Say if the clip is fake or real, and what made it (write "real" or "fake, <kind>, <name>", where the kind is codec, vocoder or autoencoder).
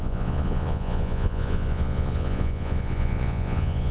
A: fake, vocoder, Vocos